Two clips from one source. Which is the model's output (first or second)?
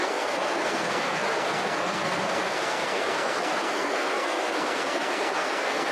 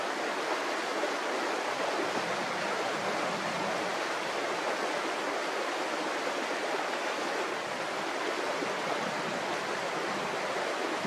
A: first